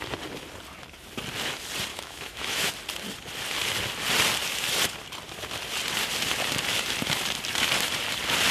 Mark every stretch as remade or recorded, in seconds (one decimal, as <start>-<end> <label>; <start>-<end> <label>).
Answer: 0.0-1.9 recorded; 1.9-2.7 remade; 2.7-8.5 recorded